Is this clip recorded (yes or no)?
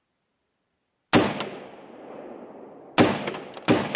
yes